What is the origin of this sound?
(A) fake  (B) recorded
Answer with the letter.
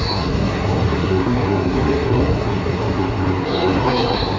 A